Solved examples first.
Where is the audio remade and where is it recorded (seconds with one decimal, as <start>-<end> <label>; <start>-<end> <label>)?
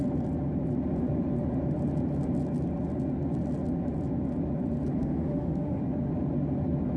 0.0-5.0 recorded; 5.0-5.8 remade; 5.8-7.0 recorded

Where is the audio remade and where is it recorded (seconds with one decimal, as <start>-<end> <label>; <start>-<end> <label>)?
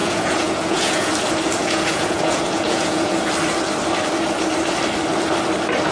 0.0-1.1 remade; 1.1-1.6 recorded; 1.6-3.2 remade; 3.2-5.9 recorded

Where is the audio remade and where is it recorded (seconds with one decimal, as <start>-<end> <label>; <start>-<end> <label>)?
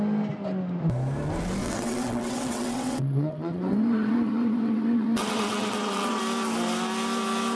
0.0-1.6 recorded; 1.6-6.2 remade; 6.2-7.6 recorded